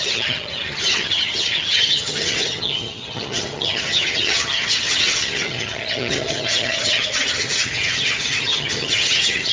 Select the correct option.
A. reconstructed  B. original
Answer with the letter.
A